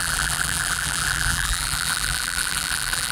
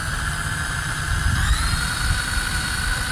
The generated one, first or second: first